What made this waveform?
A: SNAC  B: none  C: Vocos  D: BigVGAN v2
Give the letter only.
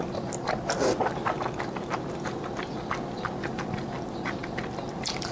B